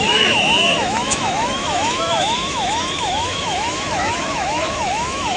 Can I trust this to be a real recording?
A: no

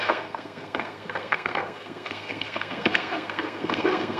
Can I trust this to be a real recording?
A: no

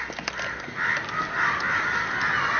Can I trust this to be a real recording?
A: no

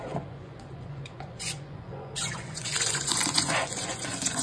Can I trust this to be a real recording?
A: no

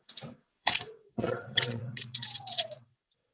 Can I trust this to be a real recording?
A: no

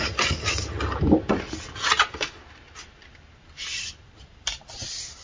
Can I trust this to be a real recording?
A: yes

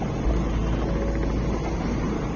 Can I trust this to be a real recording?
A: yes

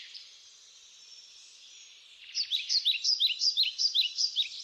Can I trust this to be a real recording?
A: no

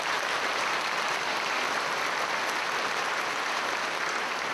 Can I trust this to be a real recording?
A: yes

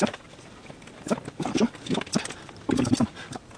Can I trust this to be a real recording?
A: yes